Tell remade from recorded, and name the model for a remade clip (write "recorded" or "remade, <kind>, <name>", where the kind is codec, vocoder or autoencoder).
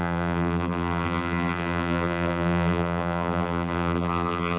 remade, vocoder, BigVGAN v2